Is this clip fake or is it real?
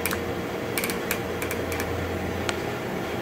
real